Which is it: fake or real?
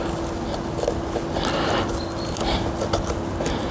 real